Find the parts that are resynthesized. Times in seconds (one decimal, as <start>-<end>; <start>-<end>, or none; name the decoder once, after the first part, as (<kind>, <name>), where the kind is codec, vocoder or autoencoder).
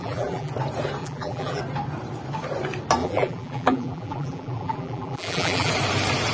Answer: 0.0-0.5 (vocoder, BigVGAN v2); 1.0-1.6; 3.0-5.7